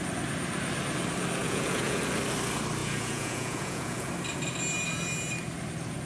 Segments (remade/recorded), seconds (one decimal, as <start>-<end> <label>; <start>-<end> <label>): 0.0-1.4 recorded; 1.4-2.0 remade; 2.0-2.8 recorded; 2.8-4.1 remade; 4.1-6.1 recorded